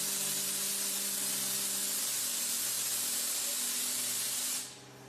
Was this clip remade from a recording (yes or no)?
no